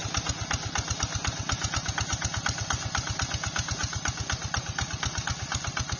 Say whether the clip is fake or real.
real